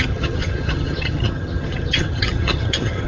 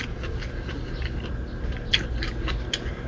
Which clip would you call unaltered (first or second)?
second